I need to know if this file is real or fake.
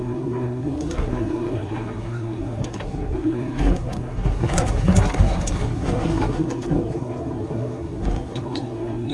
fake